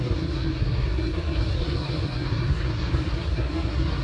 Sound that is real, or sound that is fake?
fake